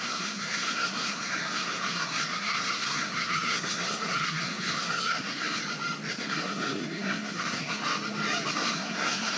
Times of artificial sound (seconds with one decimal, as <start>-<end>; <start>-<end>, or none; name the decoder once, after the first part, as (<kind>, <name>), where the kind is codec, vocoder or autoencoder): 0.0-5.6 (codec, SNAC); 6.1-7.8; 8.5-9.4